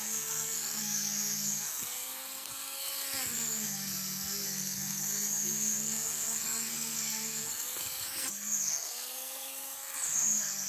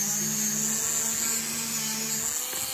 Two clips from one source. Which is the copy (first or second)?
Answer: first